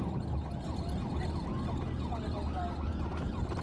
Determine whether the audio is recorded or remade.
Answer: recorded